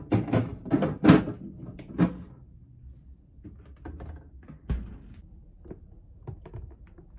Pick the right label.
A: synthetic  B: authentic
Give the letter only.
B